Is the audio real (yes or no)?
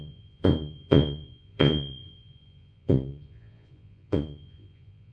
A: no